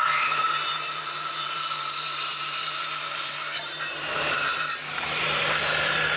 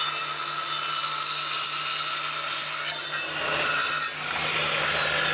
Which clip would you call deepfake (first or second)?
first